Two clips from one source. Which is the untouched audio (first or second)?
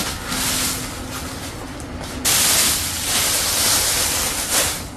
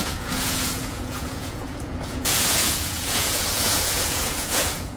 first